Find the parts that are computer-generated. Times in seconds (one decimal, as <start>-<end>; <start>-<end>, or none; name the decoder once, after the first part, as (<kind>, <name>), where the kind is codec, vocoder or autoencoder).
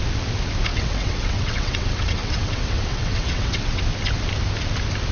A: 0.7-3.8 (vocoder, WaveNeXt)